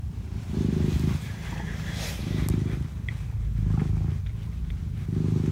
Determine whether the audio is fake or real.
real